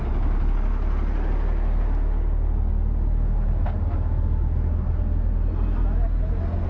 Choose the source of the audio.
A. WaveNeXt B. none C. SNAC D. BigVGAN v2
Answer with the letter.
B